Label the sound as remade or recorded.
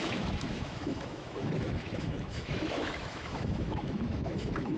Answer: remade